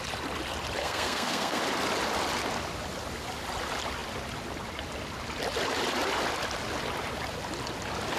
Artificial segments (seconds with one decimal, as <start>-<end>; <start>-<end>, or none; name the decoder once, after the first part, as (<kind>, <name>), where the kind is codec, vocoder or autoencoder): 0.8-1.6 (codec, SNAC)